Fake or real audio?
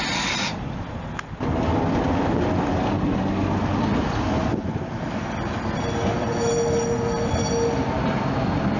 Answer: real